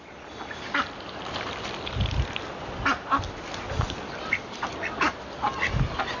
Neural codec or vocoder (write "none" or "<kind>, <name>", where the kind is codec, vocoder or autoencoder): none